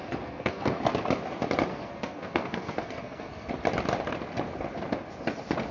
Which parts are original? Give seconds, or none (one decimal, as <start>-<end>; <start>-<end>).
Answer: 0.8-1.7; 3.5-5.7